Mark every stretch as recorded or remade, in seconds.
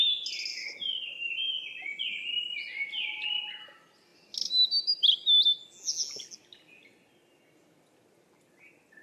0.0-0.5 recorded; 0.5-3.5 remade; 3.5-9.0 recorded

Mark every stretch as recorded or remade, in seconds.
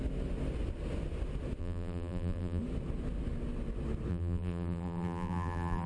0.0-1.6 recorded; 1.6-2.6 remade; 2.6-4.1 recorded; 4.1-5.9 remade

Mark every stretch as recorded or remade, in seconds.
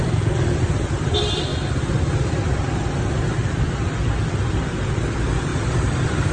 0.0-6.3 remade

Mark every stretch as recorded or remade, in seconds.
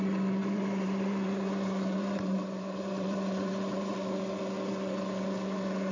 0.0-0.4 recorded; 0.4-3.9 remade; 3.9-5.9 recorded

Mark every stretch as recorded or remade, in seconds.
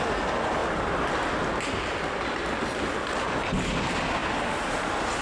0.0-5.2 recorded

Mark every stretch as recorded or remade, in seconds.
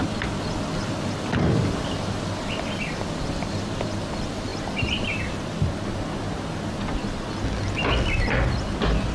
0.0-4.5 recorded; 4.5-5.3 remade; 5.3-9.1 recorded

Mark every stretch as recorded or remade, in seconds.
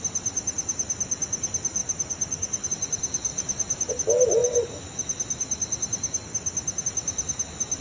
0.0-1.8 recorded; 1.8-2.7 remade; 2.7-3.3 recorded; 3.3-3.9 remade; 3.9-7.8 recorded